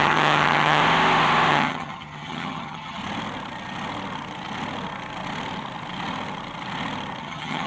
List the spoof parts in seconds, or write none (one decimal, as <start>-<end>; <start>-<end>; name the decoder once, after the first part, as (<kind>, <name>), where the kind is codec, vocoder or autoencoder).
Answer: 0.0-0.8 (vocoder, HiFi-GAN); 1.5-3.0; 7.2-7.7